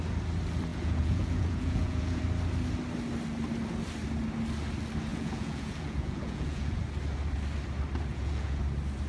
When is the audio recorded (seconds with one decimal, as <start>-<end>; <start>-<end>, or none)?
0.0-0.7; 2.2-5.1; 6.8-8.1; 8.6-9.1